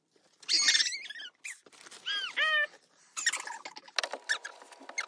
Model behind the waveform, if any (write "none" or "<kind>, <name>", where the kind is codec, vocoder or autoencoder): none